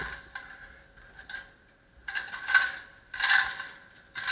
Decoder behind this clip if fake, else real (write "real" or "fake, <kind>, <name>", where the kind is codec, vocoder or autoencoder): real